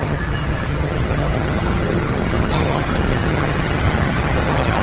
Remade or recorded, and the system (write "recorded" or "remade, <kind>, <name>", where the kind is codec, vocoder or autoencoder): remade, vocoder, HiFi-GAN